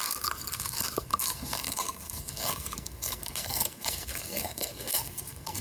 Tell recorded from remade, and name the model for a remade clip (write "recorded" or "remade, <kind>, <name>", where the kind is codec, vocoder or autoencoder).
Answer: remade, codec, SNAC